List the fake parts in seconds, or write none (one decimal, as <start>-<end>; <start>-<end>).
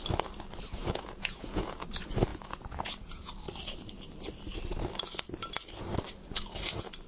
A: 0.8-1.8; 2.3-3.3